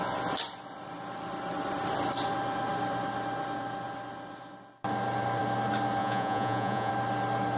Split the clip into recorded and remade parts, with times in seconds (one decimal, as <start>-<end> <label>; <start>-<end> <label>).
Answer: 0.0-6.0 recorded; 6.0-6.9 remade; 6.9-7.6 recorded